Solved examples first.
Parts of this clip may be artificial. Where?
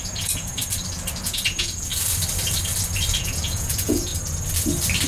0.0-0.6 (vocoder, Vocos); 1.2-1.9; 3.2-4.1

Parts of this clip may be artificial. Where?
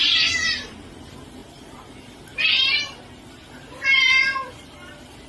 none